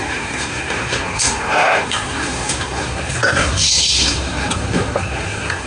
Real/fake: fake